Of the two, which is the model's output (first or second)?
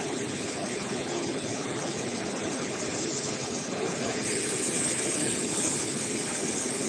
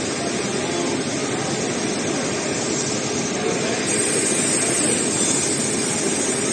first